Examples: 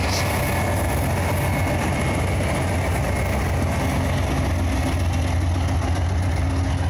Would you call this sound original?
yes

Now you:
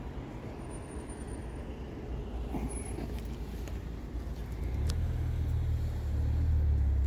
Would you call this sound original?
yes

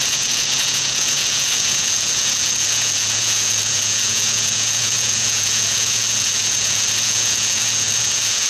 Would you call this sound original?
no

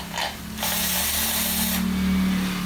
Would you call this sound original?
yes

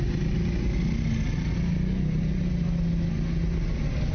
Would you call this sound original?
yes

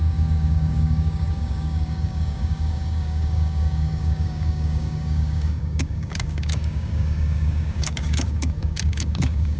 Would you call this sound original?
no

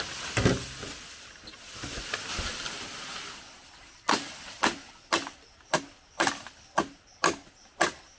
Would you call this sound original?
yes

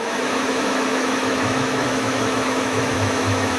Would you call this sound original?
no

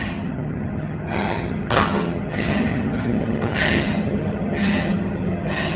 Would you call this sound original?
no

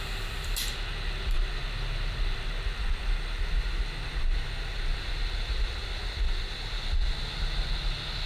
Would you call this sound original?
yes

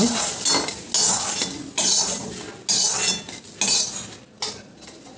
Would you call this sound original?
yes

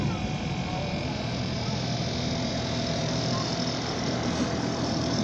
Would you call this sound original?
no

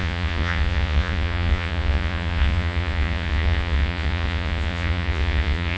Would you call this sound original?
no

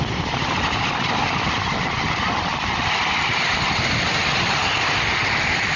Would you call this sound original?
yes